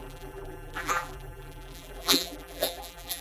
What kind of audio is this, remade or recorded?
remade